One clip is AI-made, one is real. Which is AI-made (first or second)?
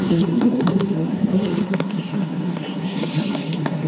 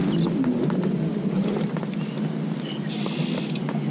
first